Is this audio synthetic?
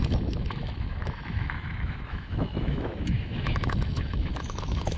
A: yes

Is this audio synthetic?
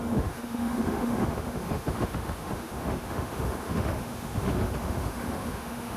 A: yes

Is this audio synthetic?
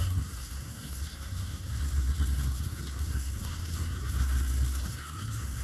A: yes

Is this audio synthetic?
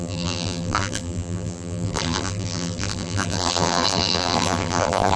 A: yes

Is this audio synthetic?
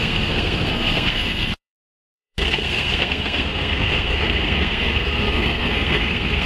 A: yes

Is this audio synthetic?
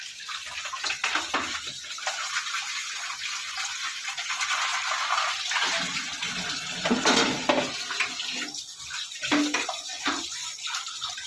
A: no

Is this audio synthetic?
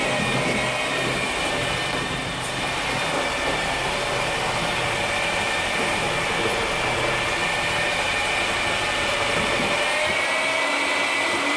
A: no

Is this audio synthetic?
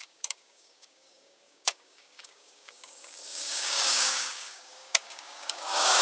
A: yes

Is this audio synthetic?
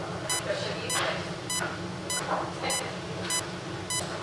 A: no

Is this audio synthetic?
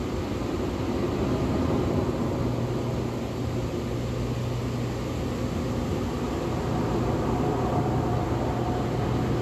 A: no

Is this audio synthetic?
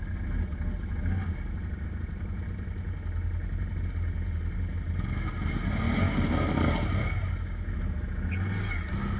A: no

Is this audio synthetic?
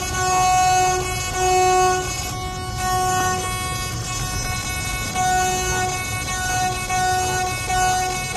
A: no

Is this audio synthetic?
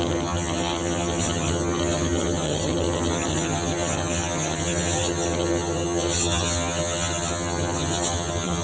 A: yes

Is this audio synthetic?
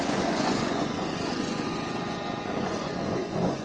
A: yes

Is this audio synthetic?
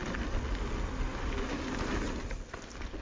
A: no